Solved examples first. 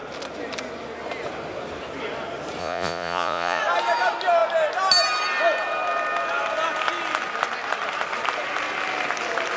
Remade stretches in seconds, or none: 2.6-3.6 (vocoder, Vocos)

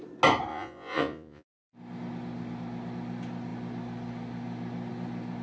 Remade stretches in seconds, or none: 0.5-1.6 (vocoder, Vocos)

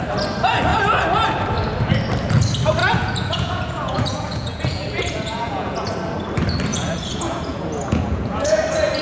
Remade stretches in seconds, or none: 2.8-5.9 (vocoder, Vocos); 6.7-8.6